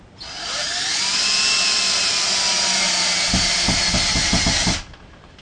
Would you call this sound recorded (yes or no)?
yes